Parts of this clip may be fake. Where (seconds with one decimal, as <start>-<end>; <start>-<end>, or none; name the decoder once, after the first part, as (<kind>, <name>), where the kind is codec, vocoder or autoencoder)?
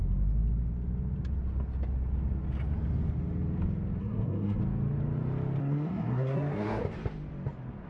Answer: 4.0-4.6 (codec, SNAC); 5.6-6.8